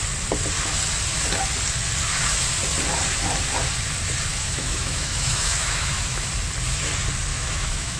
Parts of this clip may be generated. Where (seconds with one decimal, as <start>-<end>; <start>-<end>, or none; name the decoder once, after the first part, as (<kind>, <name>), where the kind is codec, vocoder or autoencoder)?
4.3-6.3 (autoencoder, DAC-VAE); 7.3-8.0